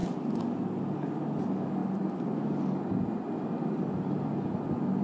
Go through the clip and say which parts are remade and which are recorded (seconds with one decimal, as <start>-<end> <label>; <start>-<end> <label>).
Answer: 0.0-5.0 recorded